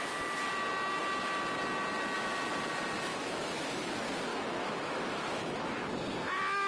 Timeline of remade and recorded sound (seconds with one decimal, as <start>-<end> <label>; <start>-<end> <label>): 0.0-3.1 recorded; 3.1-3.9 remade; 3.9-4.3 recorded; 4.3-5.9 remade; 5.9-6.7 recorded